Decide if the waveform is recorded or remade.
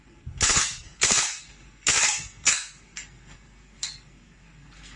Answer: remade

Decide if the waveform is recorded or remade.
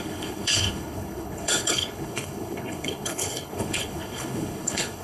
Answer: remade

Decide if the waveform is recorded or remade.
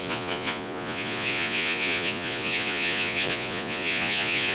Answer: remade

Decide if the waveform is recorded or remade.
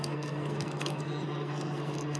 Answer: remade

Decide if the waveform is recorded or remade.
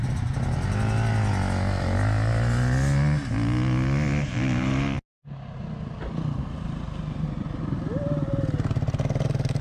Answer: recorded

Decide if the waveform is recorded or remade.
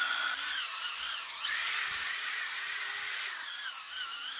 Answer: recorded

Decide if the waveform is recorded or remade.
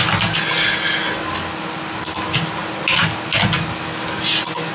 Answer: recorded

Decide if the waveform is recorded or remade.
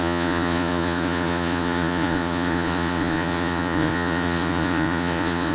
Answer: remade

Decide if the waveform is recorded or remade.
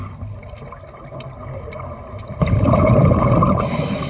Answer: recorded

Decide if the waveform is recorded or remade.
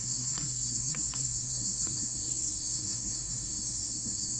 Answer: remade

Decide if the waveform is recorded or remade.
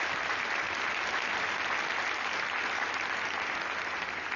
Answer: recorded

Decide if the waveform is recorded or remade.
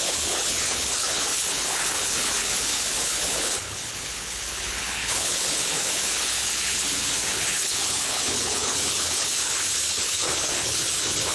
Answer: remade